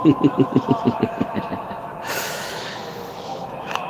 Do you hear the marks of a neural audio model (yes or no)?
yes